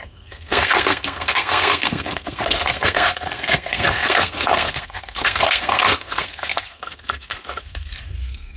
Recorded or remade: remade